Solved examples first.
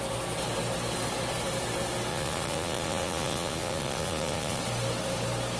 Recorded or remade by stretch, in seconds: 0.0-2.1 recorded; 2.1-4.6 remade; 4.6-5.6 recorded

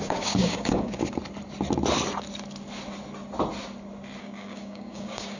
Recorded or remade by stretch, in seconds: 0.0-1.0 remade; 1.0-4.2 recorded; 4.2-5.4 remade

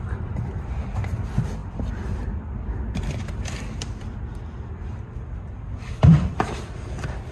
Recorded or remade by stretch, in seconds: 0.0-7.3 remade

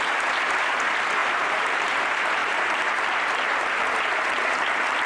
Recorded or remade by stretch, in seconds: 0.0-1.2 recorded; 1.2-2.0 remade; 2.0-2.4 recorded; 2.4-4.5 remade; 4.5-5.1 recorded

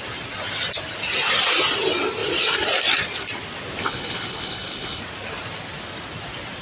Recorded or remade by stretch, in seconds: 0.0-3.8 recorded; 3.8-5.0 remade; 5.0-6.6 recorded

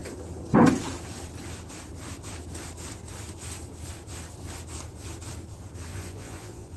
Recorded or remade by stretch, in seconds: 0.0-5.9 recorded; 5.9-6.8 remade

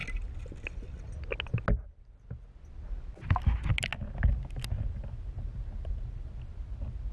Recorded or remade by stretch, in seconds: 0.0-7.1 recorded

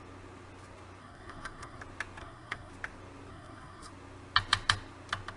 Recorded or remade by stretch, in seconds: 0.0-1.0 recorded; 1.0-1.8 remade; 1.8-2.2 recorded; 2.2-2.7 remade; 2.7-3.3 recorded; 3.3-3.9 remade; 3.9-5.4 recorded